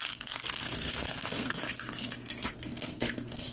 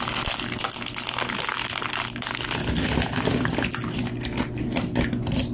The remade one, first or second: first